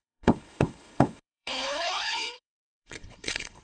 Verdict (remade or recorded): remade